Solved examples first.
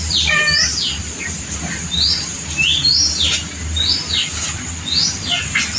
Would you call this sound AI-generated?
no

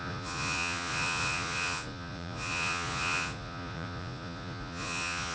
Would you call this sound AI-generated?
yes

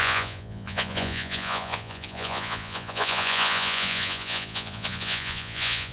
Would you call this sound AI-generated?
yes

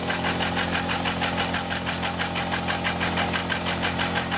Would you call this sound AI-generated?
no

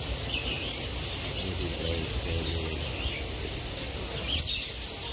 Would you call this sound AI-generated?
no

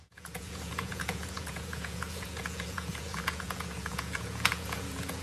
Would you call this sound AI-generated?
yes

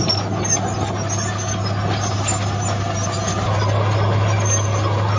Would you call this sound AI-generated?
no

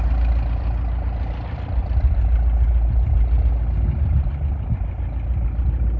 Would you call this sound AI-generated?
no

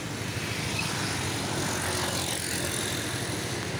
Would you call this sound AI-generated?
no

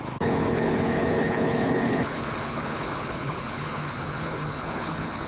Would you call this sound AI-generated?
yes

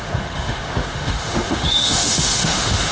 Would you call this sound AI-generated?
yes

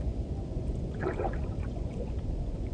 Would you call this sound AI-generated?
yes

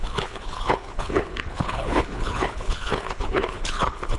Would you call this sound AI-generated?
yes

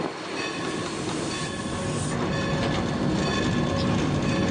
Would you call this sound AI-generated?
no